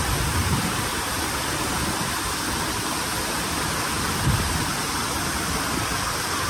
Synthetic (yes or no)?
yes